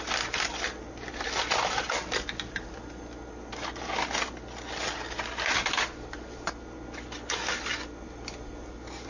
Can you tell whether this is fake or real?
real